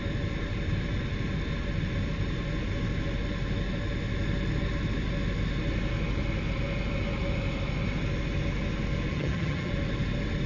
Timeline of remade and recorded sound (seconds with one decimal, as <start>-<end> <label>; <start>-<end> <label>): 0.0-9.1 recorded; 9.1-9.7 remade; 9.7-10.5 recorded